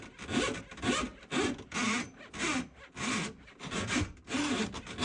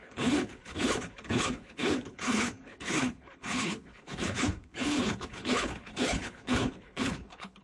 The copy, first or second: second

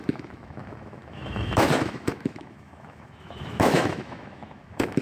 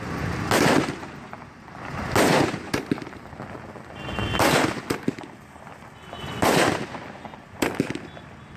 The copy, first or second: first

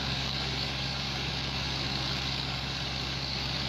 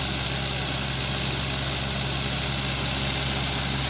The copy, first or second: first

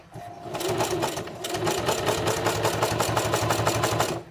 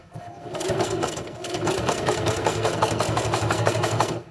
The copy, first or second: second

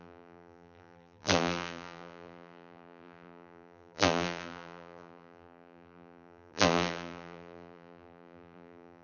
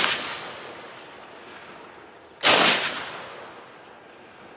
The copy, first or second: first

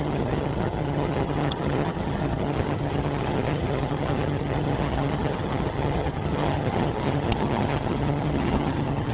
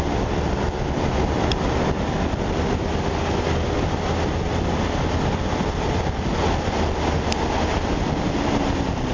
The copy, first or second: first